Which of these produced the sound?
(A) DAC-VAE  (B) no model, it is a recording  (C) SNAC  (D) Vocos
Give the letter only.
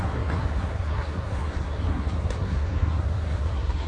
C